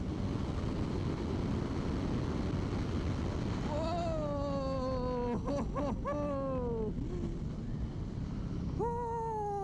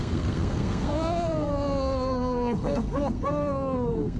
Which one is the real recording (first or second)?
first